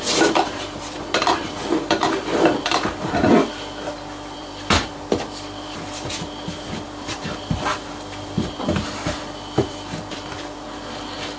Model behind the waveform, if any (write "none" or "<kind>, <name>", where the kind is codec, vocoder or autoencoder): vocoder, BigVGAN v2